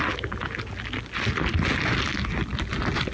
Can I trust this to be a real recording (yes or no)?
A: yes